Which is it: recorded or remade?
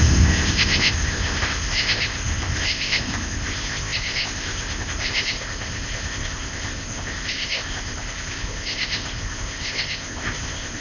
remade